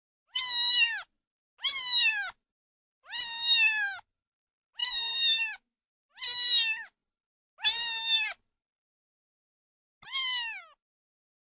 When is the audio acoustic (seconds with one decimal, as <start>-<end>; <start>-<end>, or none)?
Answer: 0.0-4.8; 6.1-11.4